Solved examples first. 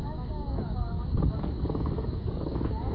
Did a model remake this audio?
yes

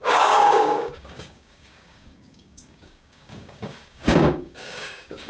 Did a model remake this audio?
yes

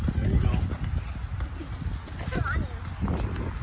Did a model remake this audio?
no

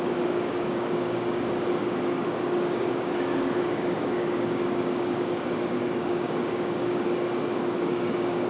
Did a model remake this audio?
yes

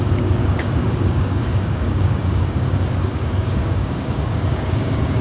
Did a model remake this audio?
yes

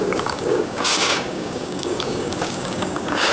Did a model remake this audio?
yes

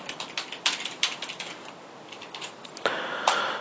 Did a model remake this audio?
no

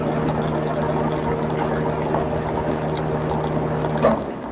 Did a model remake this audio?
no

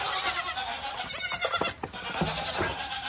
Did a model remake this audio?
no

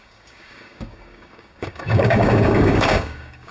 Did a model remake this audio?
yes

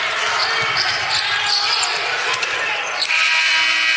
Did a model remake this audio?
no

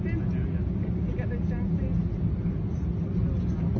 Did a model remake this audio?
no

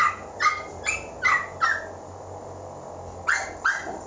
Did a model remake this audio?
no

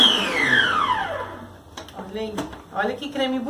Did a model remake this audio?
no